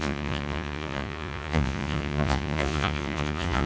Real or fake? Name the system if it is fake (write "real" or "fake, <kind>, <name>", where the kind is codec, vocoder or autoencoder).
fake, vocoder, Vocos